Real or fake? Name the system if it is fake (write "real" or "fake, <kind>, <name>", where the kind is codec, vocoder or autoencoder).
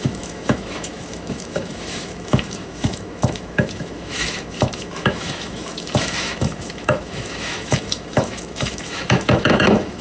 fake, autoencoder, DAC-VAE